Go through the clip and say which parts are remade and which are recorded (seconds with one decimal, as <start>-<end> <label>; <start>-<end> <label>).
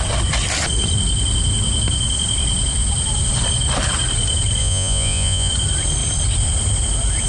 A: 0.0-4.6 recorded; 4.6-5.5 remade; 5.5-7.3 recorded